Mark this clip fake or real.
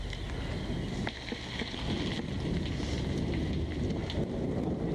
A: real